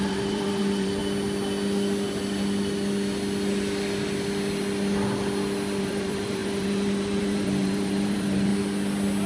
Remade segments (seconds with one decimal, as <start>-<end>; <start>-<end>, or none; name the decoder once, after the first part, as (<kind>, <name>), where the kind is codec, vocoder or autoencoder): 0.0-1.0 (vocoder, BigVGAN v2); 5.8-8.5